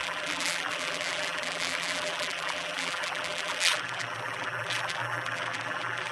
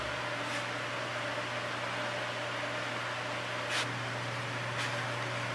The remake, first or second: first